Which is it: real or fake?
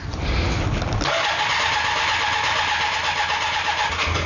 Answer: real